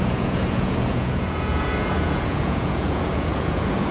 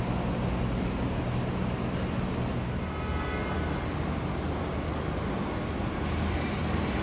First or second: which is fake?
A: first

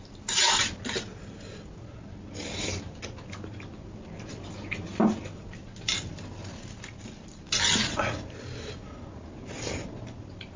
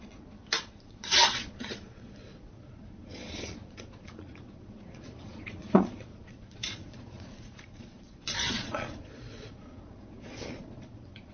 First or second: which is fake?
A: second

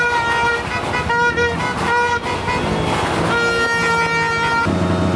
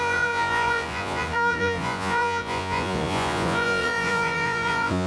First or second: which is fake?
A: second